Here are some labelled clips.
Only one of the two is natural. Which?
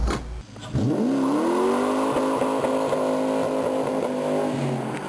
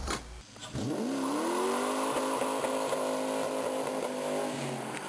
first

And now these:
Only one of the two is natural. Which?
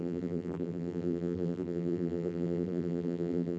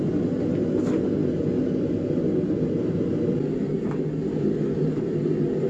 second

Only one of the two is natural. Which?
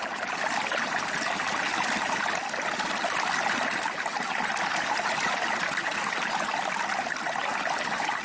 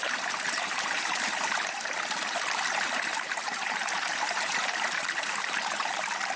first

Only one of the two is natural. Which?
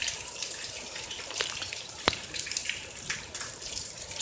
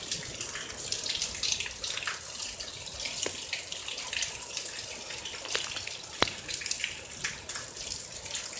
second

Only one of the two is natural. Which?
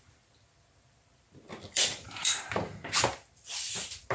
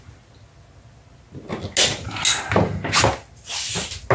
second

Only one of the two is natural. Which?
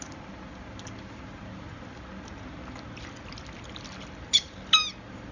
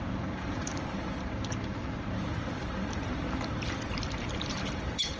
first